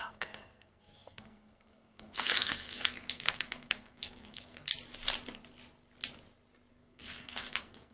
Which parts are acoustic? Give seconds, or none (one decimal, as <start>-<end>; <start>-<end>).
4.7-6.7